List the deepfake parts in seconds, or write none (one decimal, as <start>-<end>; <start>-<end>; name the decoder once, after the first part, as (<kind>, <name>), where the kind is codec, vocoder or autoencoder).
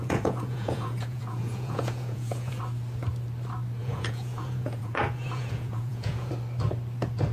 0.0-2.6 (vocoder, Vocos); 3.8-6.3